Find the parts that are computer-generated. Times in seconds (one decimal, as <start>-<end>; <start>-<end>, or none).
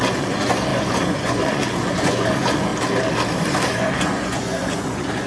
0.0-2.7; 3.7-5.3